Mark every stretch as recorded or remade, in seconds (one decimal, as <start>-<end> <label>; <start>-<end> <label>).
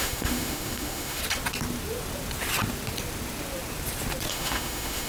0.0-1.2 remade; 1.2-4.3 recorded; 4.3-5.1 remade